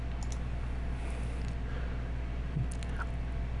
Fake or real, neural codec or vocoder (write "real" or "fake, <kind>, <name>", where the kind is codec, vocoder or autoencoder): real